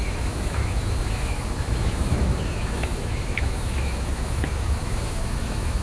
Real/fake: fake